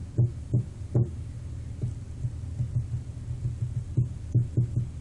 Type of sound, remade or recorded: recorded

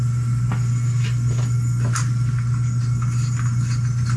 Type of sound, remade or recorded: recorded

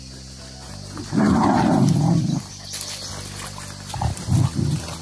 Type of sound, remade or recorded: recorded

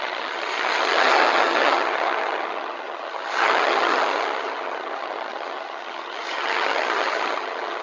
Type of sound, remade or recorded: remade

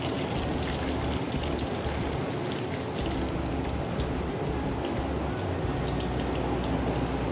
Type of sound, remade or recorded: recorded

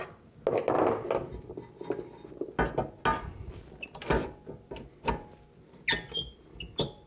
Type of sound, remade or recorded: recorded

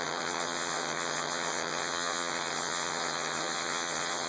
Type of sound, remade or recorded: remade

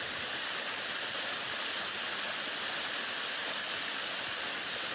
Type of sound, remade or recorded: recorded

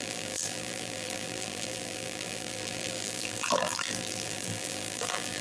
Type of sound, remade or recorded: remade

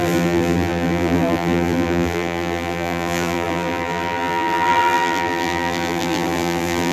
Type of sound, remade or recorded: remade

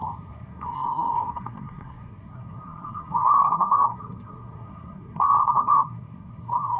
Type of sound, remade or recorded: remade